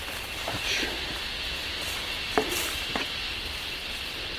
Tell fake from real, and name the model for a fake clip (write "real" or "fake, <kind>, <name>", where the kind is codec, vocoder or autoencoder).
real